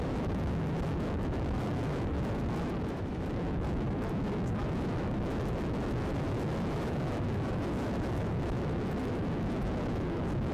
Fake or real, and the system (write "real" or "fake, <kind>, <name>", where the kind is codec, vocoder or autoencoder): fake, autoencoder, DAC-VAE